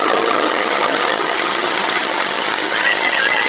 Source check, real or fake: fake